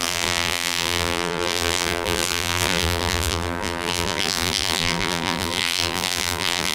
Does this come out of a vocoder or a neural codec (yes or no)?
yes